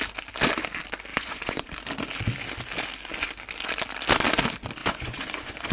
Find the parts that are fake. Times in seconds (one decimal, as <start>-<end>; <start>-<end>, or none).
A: 1.1-1.7; 4.8-5.7